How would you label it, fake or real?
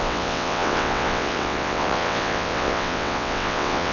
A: fake